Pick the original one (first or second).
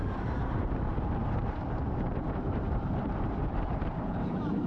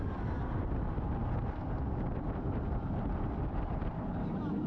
second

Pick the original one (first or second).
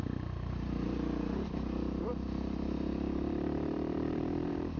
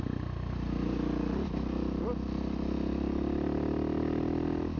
second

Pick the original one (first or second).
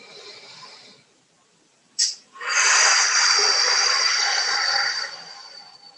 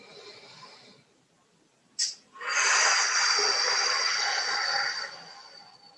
second